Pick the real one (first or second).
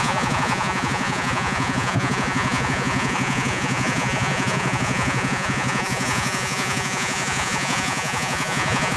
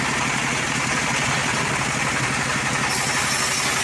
second